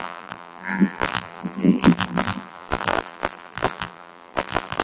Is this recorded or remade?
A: remade